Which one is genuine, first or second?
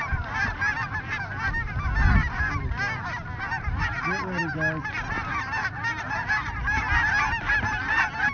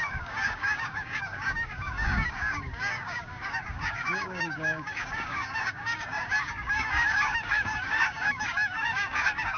first